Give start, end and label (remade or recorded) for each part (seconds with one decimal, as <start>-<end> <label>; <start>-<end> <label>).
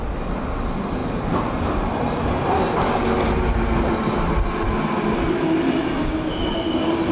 0.0-7.1 recorded